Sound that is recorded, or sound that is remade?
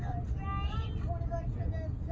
recorded